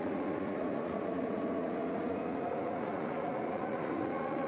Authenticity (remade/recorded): remade